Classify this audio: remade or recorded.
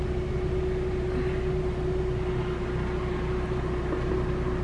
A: recorded